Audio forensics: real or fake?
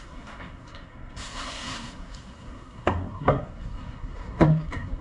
fake